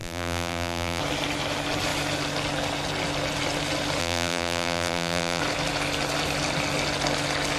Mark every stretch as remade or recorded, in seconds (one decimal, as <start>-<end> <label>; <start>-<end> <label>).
0.0-1.0 remade; 1.0-4.0 recorded; 4.0-5.4 remade; 5.4-7.6 recorded